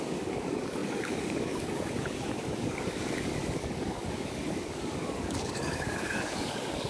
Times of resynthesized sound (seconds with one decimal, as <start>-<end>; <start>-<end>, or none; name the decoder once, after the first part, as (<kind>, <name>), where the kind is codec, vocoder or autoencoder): 0.0-6.9 (codec, DAC)